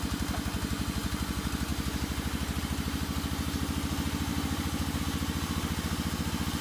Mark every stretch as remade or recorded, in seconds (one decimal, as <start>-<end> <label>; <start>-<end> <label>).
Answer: 0.0-4.3 recorded; 4.3-5.0 remade; 5.0-6.6 recorded